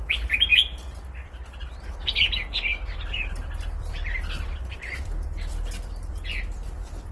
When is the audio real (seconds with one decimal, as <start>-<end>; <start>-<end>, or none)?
0.0-0.5; 2.2-2.7